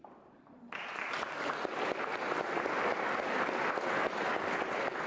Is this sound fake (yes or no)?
no